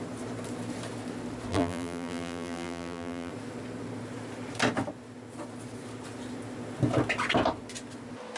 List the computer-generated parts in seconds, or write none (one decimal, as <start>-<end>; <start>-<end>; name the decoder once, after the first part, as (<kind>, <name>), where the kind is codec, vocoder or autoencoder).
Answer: 1.5-3.3 (vocoder, BigVGAN v2)